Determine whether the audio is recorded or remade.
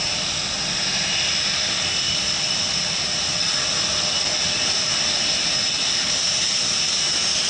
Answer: recorded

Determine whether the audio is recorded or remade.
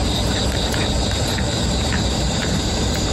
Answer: remade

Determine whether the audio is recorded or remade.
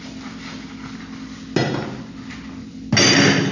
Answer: recorded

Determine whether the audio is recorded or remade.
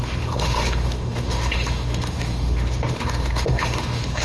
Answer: remade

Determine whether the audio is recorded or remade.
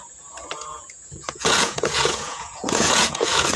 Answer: remade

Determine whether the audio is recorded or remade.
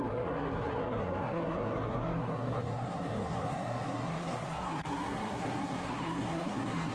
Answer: remade